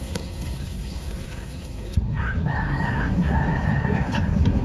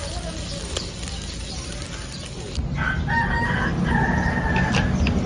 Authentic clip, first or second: second